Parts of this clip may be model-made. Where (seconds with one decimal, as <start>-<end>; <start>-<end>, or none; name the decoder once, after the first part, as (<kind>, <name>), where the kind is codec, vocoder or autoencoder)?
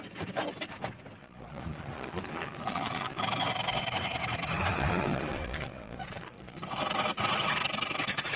1.2-3.2 (vocoder, Vocos); 4.7-6.6